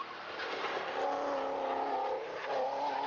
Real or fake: real